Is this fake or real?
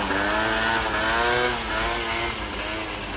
real